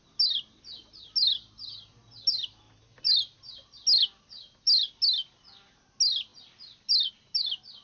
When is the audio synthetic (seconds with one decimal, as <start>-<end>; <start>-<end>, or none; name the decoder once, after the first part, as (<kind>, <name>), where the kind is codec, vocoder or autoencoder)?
none